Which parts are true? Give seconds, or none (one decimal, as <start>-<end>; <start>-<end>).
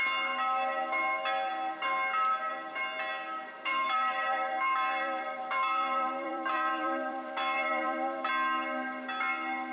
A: 0.0-3.7; 8.3-9.7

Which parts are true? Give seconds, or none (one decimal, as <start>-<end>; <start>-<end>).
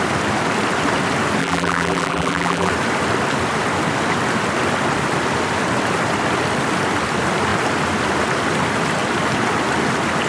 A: 0.0-1.4; 2.7-10.3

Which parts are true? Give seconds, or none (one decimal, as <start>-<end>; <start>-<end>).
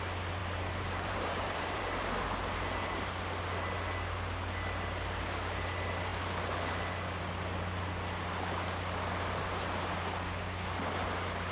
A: 0.0-0.4; 1.8-11.5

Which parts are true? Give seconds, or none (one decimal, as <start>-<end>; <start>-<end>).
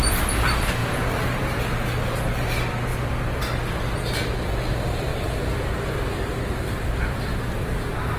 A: 0.0-0.8; 1.6-5.1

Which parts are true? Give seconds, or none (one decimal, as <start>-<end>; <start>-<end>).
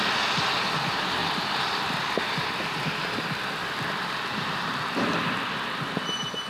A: 0.0-1.2; 5.1-6.5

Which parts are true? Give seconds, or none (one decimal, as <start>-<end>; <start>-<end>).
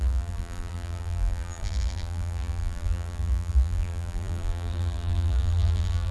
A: none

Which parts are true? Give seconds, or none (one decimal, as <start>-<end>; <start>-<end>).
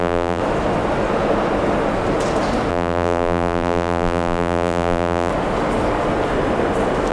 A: 0.4-2.7; 5.3-7.1